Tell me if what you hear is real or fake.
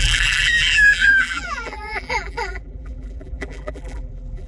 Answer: fake